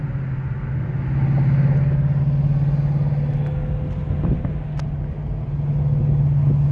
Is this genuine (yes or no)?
yes